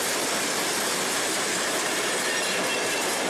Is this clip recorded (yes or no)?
yes